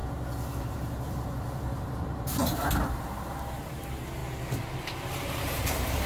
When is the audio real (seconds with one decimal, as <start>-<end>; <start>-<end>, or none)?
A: 0.0-0.6; 2.4-3.0; 4.2-5.1

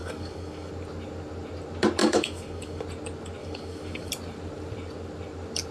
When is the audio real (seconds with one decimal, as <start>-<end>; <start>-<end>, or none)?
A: 0.7-2.0; 2.8-3.4; 4.1-5.7